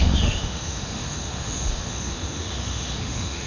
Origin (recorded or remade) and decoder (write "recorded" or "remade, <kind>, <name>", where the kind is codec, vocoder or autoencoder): remade, autoencoder, DAC-VAE